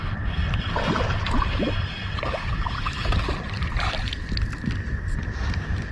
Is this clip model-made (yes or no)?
no